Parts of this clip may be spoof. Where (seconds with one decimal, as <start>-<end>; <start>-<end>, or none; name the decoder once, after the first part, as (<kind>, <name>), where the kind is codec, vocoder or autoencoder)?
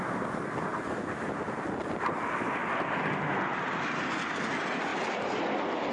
2.6-3.1 (vocoder, BigVGAN v2); 4.9-5.4